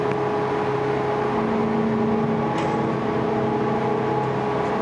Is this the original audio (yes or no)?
yes